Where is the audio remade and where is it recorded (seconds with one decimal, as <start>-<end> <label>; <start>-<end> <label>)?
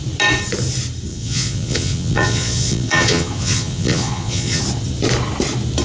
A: 0.0-1.1 recorded; 1.1-4.6 remade; 4.6-5.8 recorded